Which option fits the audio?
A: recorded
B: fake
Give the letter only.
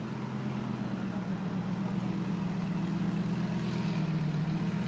A